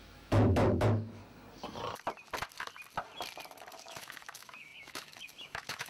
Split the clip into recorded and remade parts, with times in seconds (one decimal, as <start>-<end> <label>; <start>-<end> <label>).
0.0-1.2 remade; 1.2-3.8 recorded; 3.8-5.9 remade